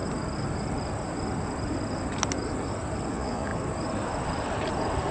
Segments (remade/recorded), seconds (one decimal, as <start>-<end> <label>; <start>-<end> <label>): 0.0-3.1 recorded; 3.1-3.5 remade; 3.5-5.1 recorded